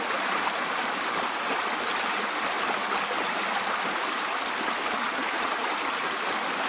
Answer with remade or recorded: recorded